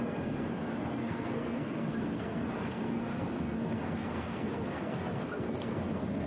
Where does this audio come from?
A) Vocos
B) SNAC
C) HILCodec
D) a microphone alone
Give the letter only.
B